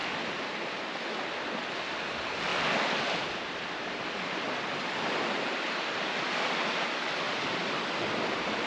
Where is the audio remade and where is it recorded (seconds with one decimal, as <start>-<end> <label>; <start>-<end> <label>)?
0.0-1.2 recorded; 1.2-2.5 remade; 2.5-4.5 recorded; 4.5-8.7 remade